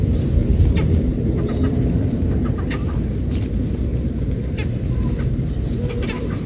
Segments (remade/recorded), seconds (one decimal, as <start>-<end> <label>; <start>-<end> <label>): 0.0-6.5 remade